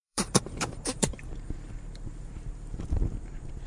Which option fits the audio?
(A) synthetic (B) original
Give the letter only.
A